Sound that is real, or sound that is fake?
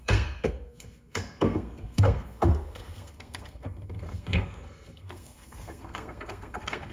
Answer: fake